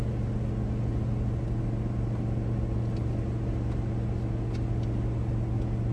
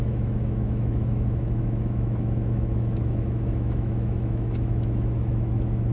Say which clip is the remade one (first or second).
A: second